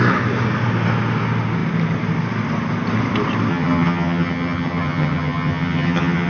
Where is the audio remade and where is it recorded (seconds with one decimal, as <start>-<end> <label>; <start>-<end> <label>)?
0.0-3.5 recorded; 3.5-6.3 remade